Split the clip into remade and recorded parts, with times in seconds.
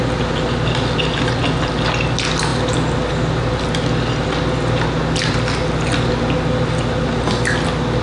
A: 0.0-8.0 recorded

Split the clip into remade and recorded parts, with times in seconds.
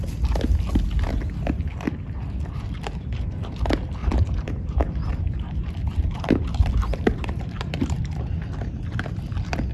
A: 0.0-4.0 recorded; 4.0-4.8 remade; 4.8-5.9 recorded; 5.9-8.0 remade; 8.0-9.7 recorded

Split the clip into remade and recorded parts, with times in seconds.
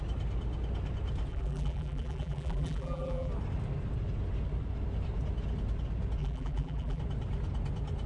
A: 0.0-1.3 recorded; 1.3-3.3 remade; 3.3-6.2 recorded; 6.2-7.0 remade; 7.0-8.1 recorded